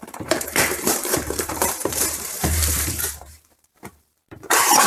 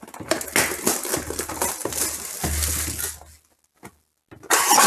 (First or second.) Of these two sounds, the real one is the second